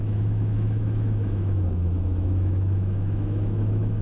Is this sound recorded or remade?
remade